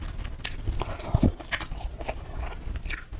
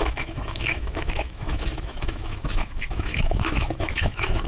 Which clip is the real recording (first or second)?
first